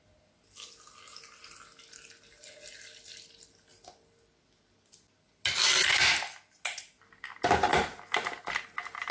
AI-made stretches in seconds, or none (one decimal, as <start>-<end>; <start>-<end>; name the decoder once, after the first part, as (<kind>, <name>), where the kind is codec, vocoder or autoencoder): none